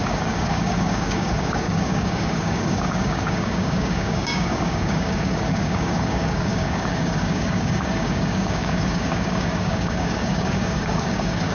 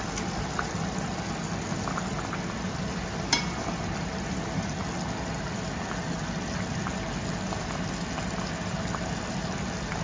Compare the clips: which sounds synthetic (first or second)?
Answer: first